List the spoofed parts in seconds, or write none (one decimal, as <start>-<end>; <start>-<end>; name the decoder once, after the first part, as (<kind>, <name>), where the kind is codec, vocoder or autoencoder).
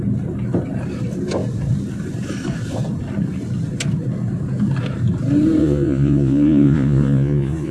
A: 5.6-7.7 (vocoder, Vocos)